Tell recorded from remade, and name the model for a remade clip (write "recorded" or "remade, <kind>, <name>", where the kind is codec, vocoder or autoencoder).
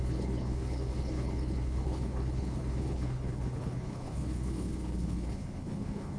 remade, codec, HILCodec